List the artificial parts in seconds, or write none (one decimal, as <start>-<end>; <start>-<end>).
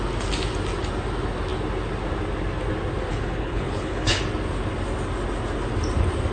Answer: 3.1-4.2